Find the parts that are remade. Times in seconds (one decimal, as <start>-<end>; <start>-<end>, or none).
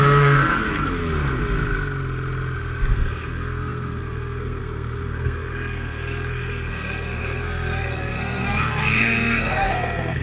0.0-1.0; 2.9-10.2